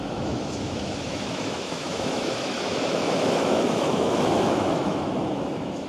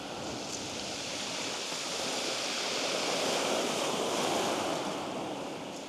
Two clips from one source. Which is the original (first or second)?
second